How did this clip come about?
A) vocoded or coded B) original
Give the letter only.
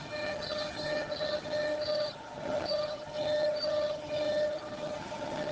A